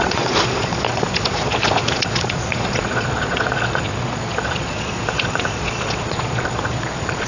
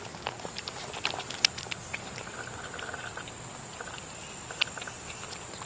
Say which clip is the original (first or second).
second